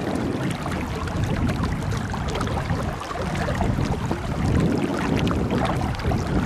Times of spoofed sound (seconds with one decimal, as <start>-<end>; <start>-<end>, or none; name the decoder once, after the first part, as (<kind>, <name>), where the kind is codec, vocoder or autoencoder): none